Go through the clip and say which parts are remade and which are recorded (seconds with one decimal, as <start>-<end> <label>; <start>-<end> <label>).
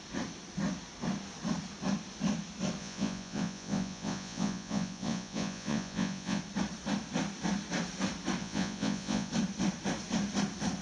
0.0-2.8 recorded; 2.8-6.4 remade; 6.4-8.4 recorded; 8.4-9.3 remade; 9.3-10.8 recorded